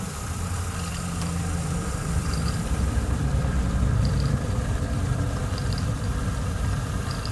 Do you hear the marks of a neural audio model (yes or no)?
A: yes